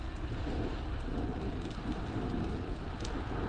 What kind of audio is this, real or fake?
real